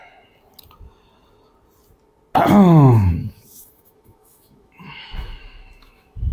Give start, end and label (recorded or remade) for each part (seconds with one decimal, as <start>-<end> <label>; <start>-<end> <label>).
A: 0.0-3.2 recorded; 3.2-6.3 remade